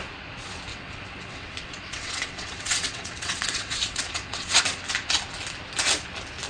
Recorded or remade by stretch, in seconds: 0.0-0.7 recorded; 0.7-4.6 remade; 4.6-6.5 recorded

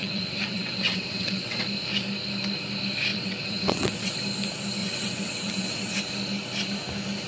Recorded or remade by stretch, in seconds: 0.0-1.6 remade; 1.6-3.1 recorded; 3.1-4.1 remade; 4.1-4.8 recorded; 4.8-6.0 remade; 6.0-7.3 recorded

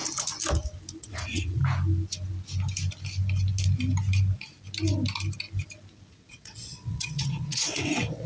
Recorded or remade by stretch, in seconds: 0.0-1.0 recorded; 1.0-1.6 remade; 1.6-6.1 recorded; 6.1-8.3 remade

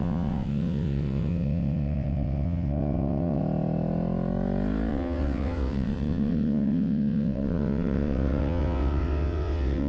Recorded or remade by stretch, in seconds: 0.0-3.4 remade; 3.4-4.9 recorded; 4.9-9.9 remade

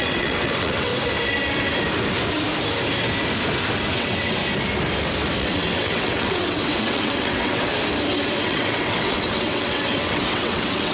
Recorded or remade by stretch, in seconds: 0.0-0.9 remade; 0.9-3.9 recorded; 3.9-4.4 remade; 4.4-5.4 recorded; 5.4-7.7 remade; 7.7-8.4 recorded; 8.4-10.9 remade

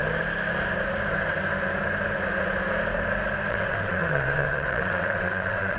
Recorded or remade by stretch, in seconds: 0.0-3.5 recorded; 3.5-5.8 remade

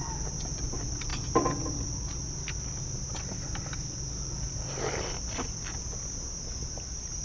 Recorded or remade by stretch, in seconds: 0.0-7.2 recorded